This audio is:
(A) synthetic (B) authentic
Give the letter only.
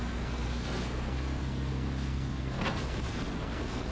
A